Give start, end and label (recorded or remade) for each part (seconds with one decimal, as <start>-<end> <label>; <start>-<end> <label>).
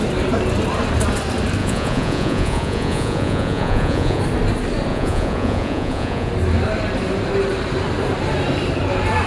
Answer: 0.0-1.6 recorded; 1.6-4.2 remade; 4.2-4.9 recorded; 4.9-6.3 remade; 6.3-9.3 recorded